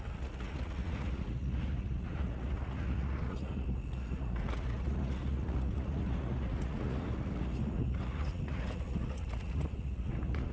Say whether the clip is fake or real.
fake